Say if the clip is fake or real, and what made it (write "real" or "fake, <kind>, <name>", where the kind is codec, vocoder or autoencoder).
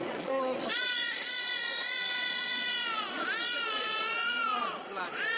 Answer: fake, vocoder, Vocos